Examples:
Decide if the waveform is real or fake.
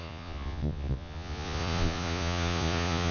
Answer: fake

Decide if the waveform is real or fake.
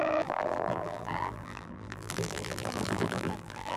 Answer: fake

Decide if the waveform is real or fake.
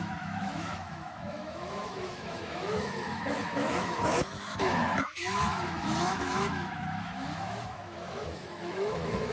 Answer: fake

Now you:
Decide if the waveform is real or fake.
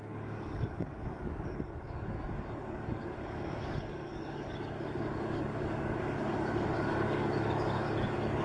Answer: fake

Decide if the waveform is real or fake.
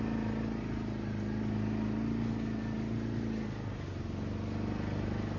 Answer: real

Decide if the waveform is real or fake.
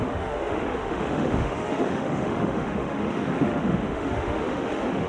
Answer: fake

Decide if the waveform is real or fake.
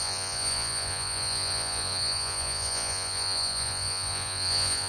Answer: fake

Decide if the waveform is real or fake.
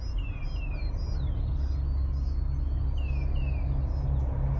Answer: real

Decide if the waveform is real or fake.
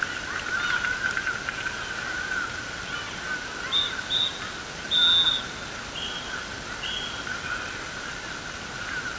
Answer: real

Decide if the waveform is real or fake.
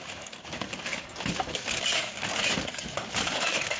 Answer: fake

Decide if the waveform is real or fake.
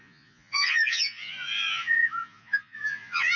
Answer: fake